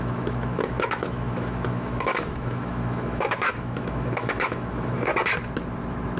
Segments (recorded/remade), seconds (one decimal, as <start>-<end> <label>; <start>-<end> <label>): 0.0-5.1 remade; 5.1-6.2 recorded